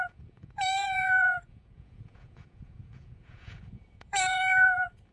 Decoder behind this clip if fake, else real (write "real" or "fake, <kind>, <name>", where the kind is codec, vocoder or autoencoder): fake, vocoder, Vocos